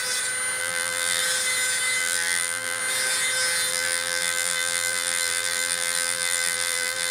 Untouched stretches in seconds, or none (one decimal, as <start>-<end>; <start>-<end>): 0.0-0.6; 1.2-2.0; 2.8-3.7